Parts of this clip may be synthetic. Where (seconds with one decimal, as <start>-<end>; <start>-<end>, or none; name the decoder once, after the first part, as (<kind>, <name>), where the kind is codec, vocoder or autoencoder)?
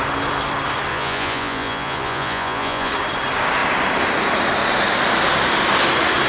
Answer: 0.9-2.9 (vocoder, Vocos)